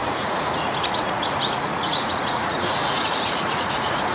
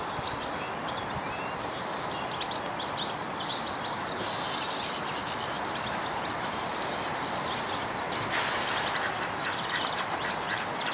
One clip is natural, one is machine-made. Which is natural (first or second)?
second